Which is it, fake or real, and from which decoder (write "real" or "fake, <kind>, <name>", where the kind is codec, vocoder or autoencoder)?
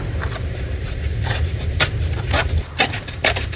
fake, vocoder, BigVGAN v2